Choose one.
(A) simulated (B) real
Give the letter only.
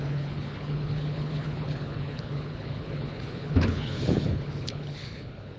A